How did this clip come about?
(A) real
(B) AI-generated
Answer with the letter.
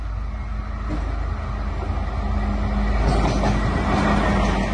A